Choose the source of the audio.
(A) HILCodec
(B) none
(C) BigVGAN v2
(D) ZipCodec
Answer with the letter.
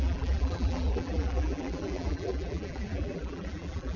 C